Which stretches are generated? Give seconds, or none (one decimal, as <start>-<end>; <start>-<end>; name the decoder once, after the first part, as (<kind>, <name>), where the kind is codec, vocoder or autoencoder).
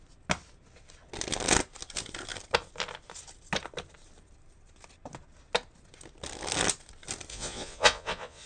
7.3-8.5 (vocoder, Vocos)